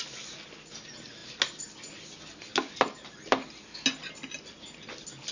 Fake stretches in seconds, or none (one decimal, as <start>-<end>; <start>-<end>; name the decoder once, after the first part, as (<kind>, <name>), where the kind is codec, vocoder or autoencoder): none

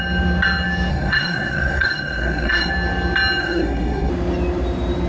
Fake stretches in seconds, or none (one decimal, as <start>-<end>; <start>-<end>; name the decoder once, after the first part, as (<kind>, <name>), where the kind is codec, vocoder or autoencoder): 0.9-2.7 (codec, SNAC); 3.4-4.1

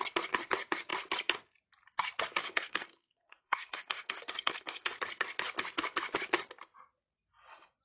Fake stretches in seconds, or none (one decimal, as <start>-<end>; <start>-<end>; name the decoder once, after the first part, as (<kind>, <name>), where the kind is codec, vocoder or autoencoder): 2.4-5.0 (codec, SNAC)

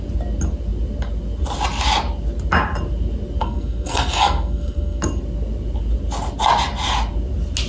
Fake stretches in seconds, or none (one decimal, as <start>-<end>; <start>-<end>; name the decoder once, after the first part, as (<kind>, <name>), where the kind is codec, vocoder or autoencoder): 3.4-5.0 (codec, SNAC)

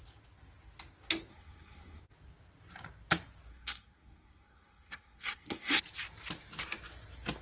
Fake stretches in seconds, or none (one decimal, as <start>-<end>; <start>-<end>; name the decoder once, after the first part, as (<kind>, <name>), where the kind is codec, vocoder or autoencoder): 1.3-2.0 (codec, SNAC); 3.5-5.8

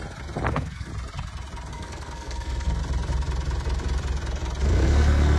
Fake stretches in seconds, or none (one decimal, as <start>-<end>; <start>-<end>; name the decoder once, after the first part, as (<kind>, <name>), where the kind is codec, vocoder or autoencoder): 0.5-0.9 (codec, SNAC); 1.7-2.8; 4.6-5.4